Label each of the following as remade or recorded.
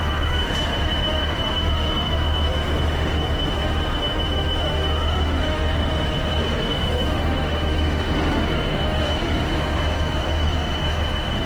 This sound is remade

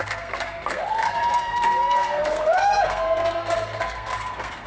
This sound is remade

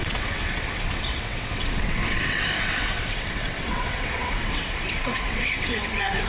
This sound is remade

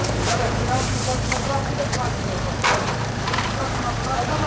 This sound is remade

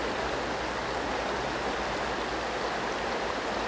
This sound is recorded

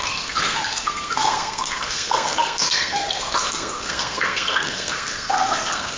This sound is remade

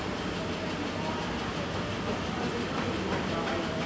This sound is recorded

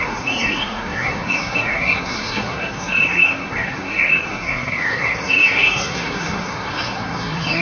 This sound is remade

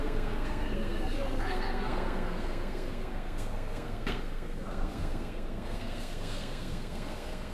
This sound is remade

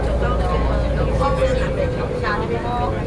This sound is recorded